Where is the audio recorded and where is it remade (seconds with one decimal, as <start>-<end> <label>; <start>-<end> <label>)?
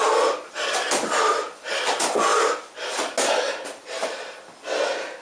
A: 0.0-5.2 recorded